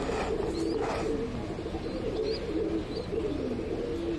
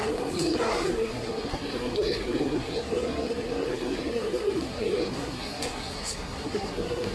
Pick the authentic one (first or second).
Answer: first